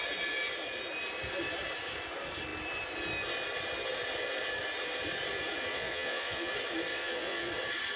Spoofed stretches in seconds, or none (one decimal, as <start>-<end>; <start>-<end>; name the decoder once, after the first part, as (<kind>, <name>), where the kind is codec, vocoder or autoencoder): 5.7-6.5 (vocoder, Vocos); 6.9-7.5